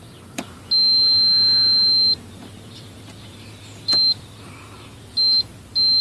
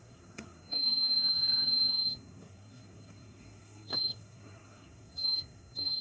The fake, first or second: second